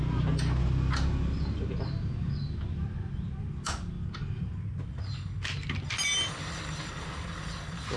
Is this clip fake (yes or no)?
no